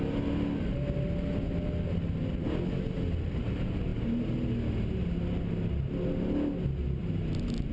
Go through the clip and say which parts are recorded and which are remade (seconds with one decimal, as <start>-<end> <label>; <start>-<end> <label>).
0.0-7.7 recorded